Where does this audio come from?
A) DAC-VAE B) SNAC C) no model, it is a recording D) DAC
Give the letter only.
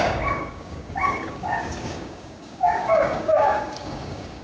D